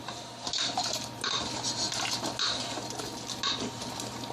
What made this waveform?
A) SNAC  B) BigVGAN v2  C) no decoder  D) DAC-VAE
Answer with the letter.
C